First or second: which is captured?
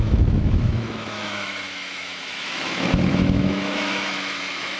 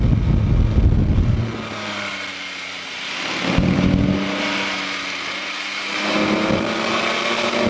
second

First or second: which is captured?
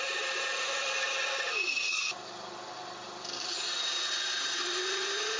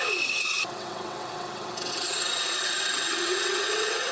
first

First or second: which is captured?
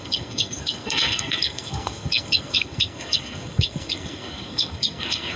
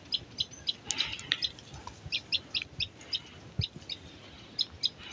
second